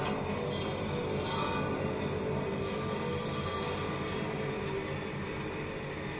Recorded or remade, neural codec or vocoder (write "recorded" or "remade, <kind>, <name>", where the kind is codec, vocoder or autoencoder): recorded